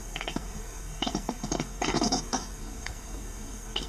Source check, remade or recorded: remade